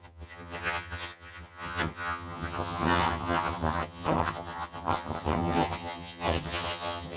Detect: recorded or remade remade